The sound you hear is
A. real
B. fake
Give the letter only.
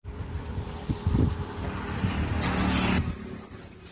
A